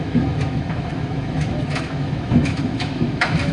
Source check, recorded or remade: remade